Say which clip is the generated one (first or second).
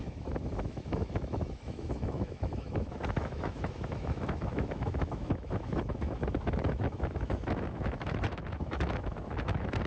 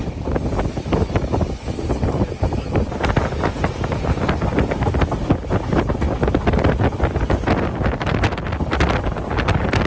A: first